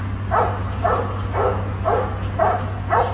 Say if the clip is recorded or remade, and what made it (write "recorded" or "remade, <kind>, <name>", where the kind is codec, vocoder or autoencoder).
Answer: recorded